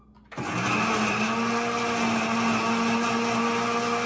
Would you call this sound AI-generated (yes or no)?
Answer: no